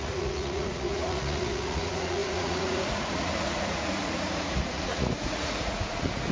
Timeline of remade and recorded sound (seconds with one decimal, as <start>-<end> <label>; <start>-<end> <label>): 0.0-6.3 remade